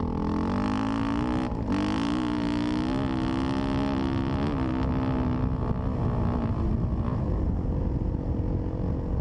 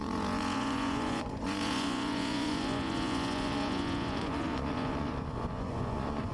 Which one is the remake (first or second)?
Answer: second